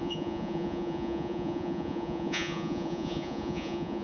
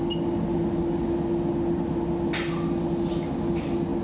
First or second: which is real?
second